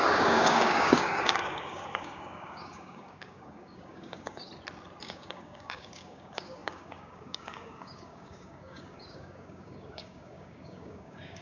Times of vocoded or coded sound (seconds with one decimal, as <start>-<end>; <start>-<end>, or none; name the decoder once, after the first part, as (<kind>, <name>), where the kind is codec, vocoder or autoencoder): 0.0-4.5 (codec, DAC); 5.0-11.4